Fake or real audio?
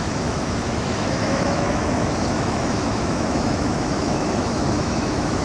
fake